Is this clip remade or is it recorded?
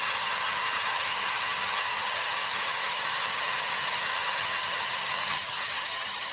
remade